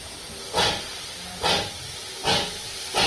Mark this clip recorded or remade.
recorded